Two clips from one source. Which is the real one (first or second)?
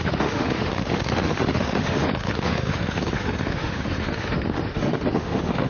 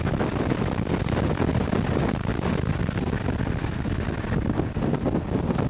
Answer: second